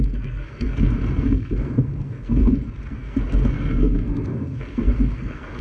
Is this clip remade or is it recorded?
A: remade